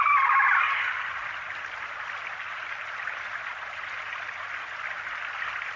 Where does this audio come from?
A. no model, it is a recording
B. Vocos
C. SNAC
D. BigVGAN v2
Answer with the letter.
A